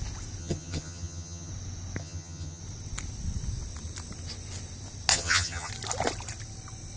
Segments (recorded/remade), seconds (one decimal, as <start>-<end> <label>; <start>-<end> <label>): 0.0-0.4 recorded; 0.4-1.5 remade; 1.5-2.0 recorded; 2.0-2.6 remade; 2.6-5.1 recorded; 5.1-5.7 remade; 5.7-7.0 recorded